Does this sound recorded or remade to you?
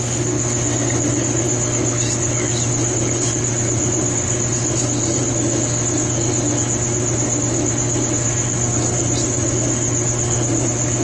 recorded